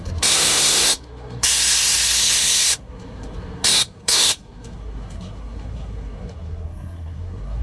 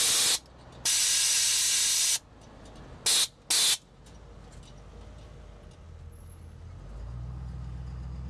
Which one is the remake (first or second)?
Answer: first